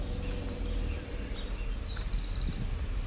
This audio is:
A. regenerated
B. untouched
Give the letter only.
B